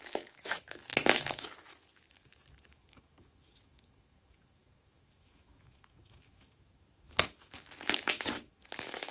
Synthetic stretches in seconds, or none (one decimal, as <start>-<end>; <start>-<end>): 0.0-9.1